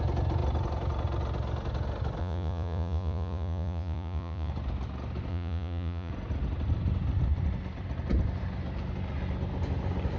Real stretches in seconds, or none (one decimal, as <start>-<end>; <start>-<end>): 0.0-2.2; 4.5-5.3; 6.1-10.2